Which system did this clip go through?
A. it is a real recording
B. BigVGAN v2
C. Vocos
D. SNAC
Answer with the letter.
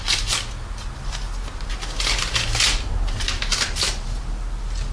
A